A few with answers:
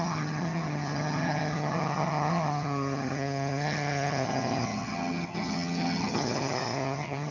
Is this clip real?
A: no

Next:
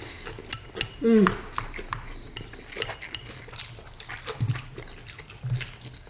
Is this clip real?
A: yes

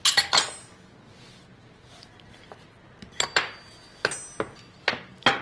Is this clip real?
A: yes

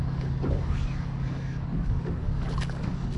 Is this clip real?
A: no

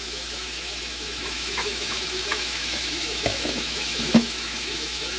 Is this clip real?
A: no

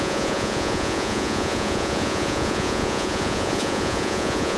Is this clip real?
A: no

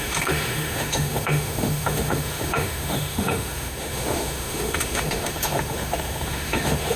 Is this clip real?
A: no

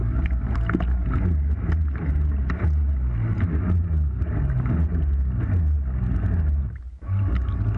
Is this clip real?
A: yes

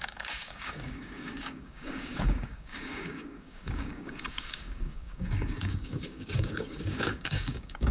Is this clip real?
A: no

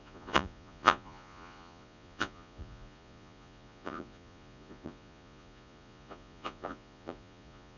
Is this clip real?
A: no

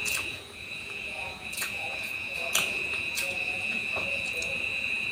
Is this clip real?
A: no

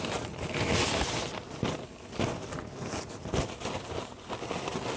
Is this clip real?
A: yes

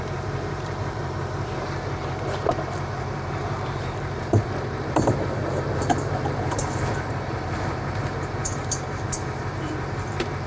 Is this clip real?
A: no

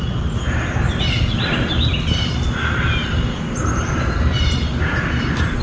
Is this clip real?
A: yes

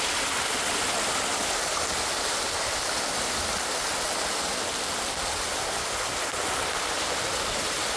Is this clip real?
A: yes